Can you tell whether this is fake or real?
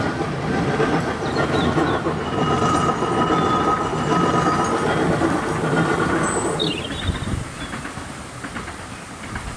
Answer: real